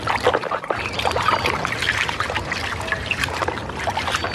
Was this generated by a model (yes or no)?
no